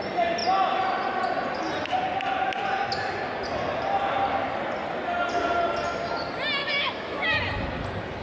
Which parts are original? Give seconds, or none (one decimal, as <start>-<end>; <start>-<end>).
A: 0.0-6.6; 7.4-8.2